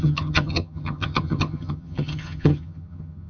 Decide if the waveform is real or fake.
fake